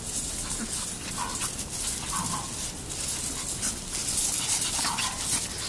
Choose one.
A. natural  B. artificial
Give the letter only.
A